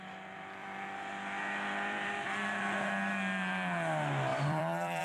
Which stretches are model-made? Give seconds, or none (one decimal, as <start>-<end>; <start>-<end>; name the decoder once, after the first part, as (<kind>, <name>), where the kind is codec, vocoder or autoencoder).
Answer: 0.6-2.6 (vocoder, BigVGAN v2); 4.3-5.0